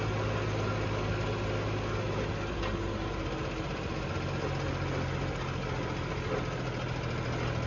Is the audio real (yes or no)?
yes